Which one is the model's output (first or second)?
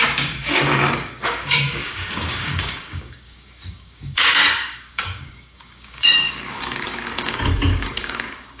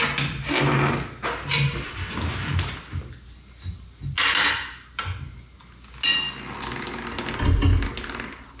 first